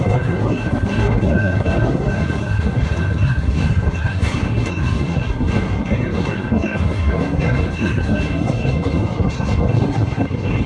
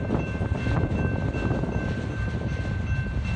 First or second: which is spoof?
first